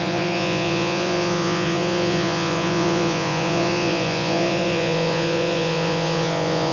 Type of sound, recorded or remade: remade